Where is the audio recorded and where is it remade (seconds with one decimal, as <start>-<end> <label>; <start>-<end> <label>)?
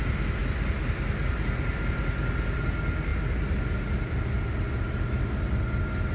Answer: 0.0-6.1 recorded